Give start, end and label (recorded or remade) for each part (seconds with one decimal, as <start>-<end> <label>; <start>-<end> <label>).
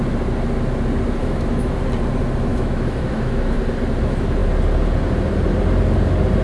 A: 0.0-1.2 recorded; 1.2-1.8 remade; 1.8-2.5 recorded; 2.5-3.6 remade; 3.6-6.4 recorded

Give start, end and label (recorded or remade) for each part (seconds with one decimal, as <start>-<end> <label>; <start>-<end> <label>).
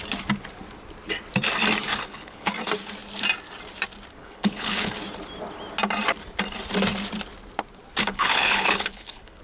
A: 0.0-1.9 recorded; 1.9-2.5 remade; 2.5-4.2 recorded; 4.2-4.9 remade; 4.9-8.0 recorded; 8.0-9.4 remade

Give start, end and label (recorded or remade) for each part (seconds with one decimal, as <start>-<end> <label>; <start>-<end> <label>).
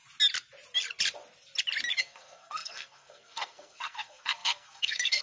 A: 0.0-2.0 recorded; 2.0-5.2 remade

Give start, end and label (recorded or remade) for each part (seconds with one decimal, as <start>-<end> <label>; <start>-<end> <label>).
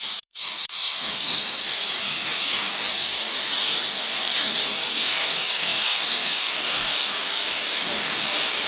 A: 0.0-8.7 remade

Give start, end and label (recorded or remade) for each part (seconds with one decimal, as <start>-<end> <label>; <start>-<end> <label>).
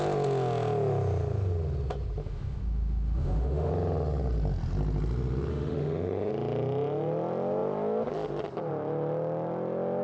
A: 0.0-2.2 recorded; 2.2-3.7 remade; 3.7-5.5 recorded; 5.5-6.3 remade; 6.3-10.0 recorded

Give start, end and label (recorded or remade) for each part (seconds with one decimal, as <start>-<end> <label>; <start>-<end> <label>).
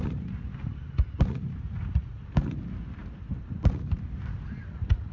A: 0.0-1.6 recorded; 1.6-2.2 remade; 2.2-5.1 recorded